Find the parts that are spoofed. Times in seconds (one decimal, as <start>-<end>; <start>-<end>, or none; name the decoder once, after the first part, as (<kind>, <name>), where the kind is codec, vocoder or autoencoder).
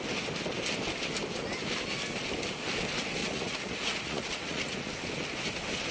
3.2-4.9 (vocoder, Vocos)